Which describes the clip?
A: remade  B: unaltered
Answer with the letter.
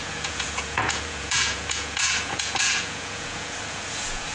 A